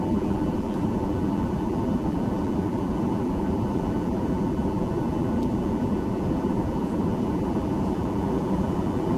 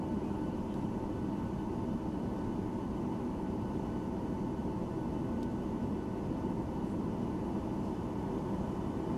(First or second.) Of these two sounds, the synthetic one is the first